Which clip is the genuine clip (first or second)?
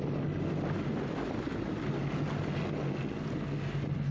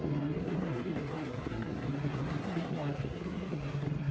first